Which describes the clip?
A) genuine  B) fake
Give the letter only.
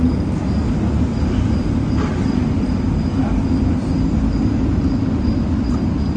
A